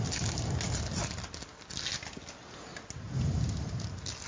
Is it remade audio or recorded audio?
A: recorded